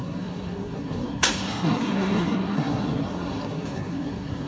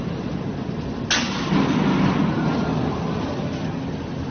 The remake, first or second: first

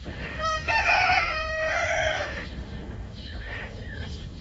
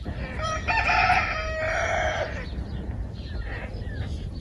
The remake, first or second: first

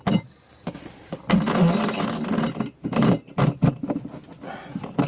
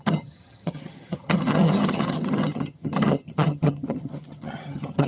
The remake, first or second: second